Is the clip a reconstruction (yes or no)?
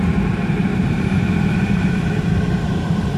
yes